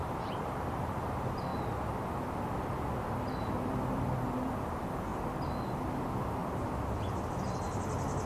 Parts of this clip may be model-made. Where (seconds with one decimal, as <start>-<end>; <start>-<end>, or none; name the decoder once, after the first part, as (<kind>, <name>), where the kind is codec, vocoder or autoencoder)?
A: 0.0-1.5 (vocoder, BigVGAN v2); 3.6-5.1; 6.0-6.4